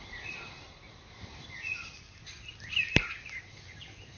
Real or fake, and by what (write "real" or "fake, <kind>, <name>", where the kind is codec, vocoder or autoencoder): real